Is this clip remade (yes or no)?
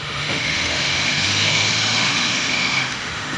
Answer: yes